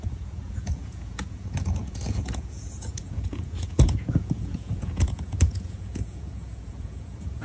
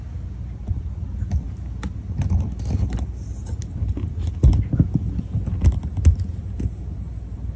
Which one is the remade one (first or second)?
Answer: first